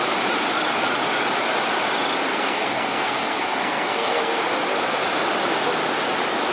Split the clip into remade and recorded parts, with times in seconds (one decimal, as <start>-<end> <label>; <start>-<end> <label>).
0.0-2.3 recorded; 2.3-4.4 remade; 4.4-6.5 recorded